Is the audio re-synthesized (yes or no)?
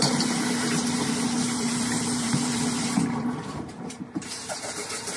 yes